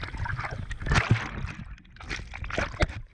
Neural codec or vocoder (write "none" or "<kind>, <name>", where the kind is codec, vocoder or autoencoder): none